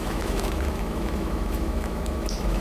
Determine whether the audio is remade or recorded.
remade